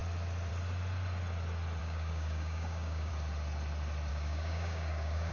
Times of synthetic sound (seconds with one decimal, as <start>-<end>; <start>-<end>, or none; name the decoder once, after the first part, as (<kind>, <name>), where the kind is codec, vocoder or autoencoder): 1.8-3.1 (codec, DAC); 4.1-5.3